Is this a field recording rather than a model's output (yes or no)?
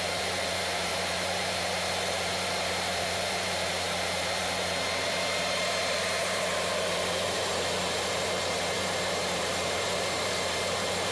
no